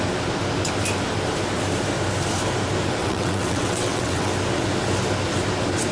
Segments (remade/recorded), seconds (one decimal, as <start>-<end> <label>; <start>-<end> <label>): 0.0-3.0 recorded; 3.0-4.3 remade; 4.3-5.9 recorded